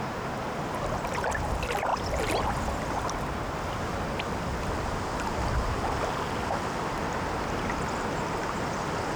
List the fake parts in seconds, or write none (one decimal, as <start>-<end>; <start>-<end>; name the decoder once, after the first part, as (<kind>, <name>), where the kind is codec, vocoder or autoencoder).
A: none